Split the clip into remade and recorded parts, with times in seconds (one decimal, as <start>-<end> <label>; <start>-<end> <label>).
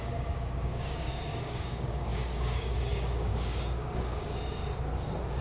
0.0-4.6 remade; 4.6-5.4 recorded